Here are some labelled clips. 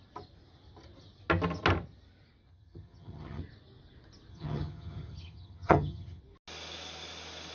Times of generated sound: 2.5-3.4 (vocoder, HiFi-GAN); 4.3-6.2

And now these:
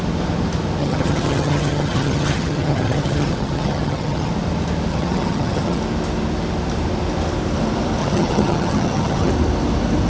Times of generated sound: 0.8-4.3 (vocoder, HiFi-GAN); 4.9-5.8; 8.0-9.3

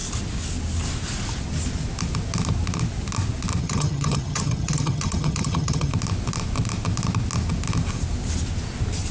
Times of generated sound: 3.6-5.9 (vocoder, HiFi-GAN)

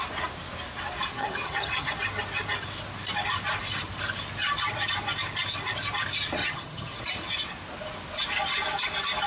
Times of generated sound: 1.1-1.9 (vocoder, HiFi-GAN); 6.4-7.0

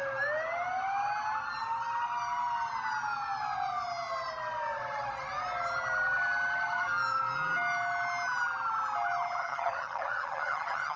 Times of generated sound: 9.4-11.0 (vocoder, HiFi-GAN)

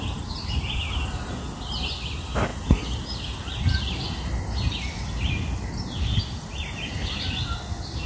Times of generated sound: none

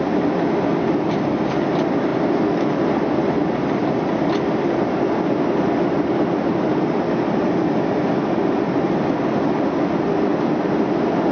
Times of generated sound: none

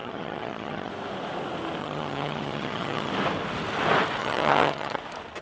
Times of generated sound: 0.0-0.9 (vocoder, HiFi-GAN); 1.8-3.1; 4.2-5.0